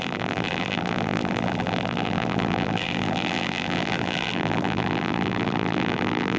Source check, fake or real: fake